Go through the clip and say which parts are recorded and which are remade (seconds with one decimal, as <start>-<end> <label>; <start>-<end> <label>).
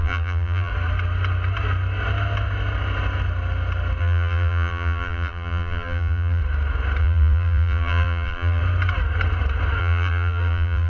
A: 0.0-0.7 remade; 0.7-4.0 recorded; 4.0-6.4 remade; 6.4-7.0 recorded; 7.0-8.6 remade; 8.6-9.8 recorded; 9.8-10.9 remade